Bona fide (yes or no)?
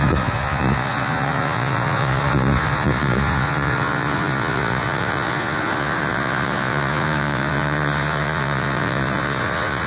no